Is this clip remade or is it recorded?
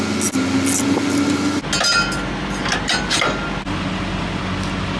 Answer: recorded